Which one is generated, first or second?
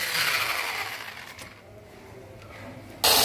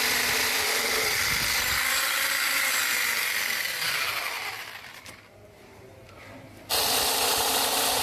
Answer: second